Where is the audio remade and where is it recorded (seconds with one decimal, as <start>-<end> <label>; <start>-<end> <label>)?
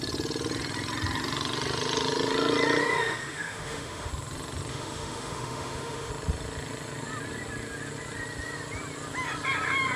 0.0-2.8 recorded; 2.8-4.1 remade; 4.1-4.7 recorded; 4.7-6.1 remade; 6.1-10.0 recorded